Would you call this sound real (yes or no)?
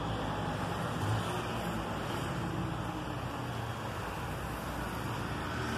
yes